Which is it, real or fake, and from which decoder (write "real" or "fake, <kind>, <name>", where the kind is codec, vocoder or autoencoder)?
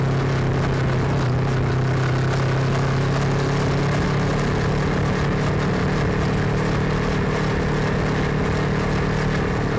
real